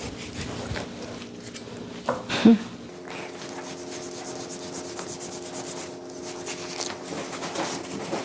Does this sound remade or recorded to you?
recorded